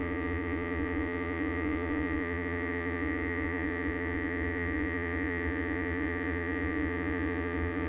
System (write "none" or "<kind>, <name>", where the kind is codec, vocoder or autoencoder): vocoder, Vocos